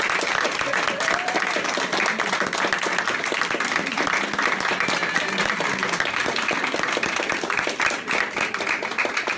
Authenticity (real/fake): real